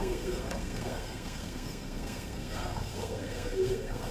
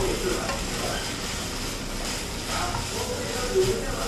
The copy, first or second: first